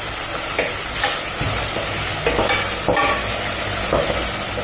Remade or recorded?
recorded